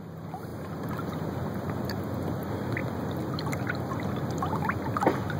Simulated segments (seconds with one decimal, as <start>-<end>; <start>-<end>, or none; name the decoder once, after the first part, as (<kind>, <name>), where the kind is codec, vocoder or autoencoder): none